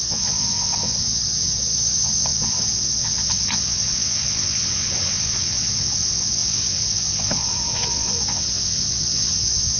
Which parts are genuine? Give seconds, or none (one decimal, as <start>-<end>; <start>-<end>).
none

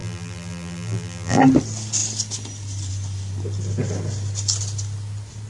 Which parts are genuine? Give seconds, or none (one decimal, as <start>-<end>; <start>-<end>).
1.4-5.5

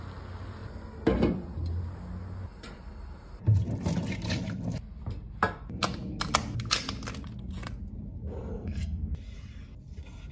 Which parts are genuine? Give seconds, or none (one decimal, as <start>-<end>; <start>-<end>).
0.0-8.5; 9.1-10.3

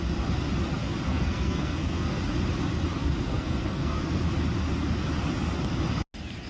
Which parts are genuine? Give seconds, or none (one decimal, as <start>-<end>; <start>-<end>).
0.0-1.1; 2.2-3.0; 4.3-6.5

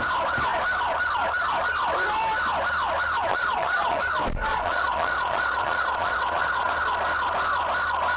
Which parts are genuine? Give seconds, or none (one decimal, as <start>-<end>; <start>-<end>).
0.0-3.3; 4.0-4.5; 6.7-8.2

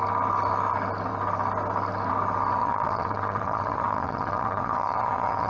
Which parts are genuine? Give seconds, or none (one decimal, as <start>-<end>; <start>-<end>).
0.0-2.6

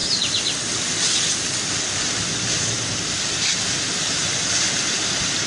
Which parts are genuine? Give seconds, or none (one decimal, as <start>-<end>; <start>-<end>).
0.0-5.5

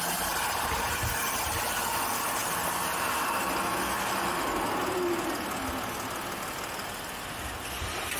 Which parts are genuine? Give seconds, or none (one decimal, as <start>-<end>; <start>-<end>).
0.0-8.2